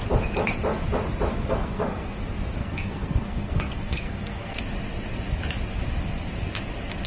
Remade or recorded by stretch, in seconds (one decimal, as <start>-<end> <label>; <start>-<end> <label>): 0.0-1.3 recorded; 1.3-2.2 remade; 2.2-2.6 recorded; 2.6-4.6 remade; 4.6-7.1 recorded